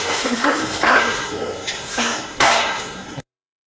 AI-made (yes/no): yes